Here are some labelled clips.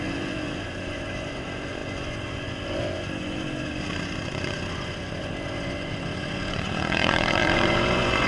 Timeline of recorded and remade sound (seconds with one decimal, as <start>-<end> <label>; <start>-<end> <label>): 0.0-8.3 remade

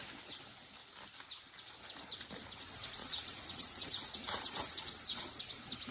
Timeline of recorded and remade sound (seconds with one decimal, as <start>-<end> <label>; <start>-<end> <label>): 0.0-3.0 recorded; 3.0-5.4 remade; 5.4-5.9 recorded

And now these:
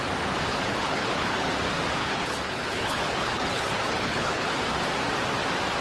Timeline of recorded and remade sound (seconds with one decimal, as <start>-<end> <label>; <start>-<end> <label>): 0.0-0.5 recorded; 0.5-1.5 remade; 1.5-2.0 recorded; 2.0-4.6 remade; 4.6-5.8 recorded